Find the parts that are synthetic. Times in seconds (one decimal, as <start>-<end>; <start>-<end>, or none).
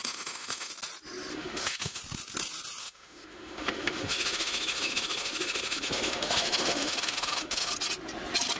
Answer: 0.0-0.7; 1.3-2.0; 2.8-7.7